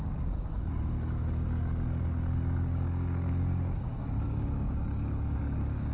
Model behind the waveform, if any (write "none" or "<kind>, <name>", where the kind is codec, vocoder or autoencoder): codec, DAC